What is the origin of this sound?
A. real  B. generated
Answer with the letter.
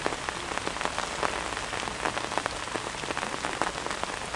A